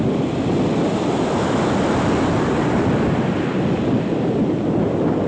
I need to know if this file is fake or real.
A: real